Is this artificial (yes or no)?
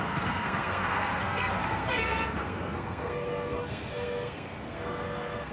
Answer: yes